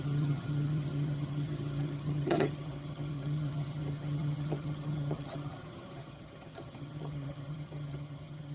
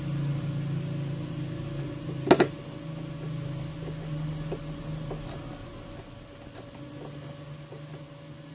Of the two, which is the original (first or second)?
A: second